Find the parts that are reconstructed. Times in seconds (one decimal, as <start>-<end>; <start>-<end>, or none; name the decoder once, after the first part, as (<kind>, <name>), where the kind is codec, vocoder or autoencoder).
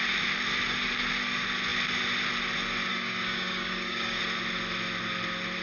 2.9-4.2 (codec, DAC)